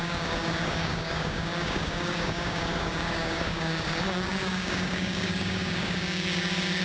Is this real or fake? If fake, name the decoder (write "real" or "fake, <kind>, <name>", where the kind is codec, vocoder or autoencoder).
fake, codec, DAC